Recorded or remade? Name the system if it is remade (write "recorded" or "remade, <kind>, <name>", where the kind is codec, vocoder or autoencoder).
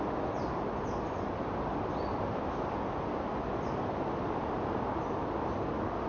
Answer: recorded